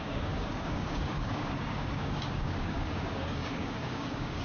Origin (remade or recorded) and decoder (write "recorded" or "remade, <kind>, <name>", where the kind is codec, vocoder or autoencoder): remade, codec, DAC